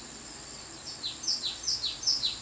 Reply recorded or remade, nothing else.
recorded